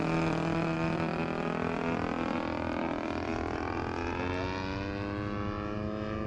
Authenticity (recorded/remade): recorded